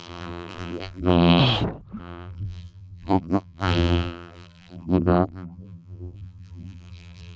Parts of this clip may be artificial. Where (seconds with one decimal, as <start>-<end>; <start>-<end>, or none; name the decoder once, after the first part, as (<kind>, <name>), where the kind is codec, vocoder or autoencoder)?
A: 0.0-1.4 (vocoder, BigVGAN v2); 2.0-7.4